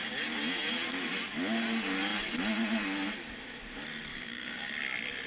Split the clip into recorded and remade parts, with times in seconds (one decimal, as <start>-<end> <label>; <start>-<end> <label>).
0.0-4.1 recorded; 4.1-4.7 remade; 4.7-5.3 recorded